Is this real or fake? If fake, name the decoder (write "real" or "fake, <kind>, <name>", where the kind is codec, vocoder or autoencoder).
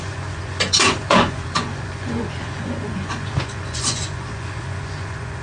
fake, vocoder, Vocos